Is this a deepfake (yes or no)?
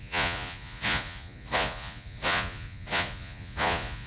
yes